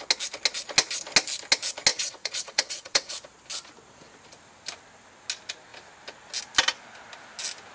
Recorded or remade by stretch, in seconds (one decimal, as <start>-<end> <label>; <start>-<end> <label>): 0.0-1.9 recorded; 1.9-3.1 remade; 3.1-7.7 recorded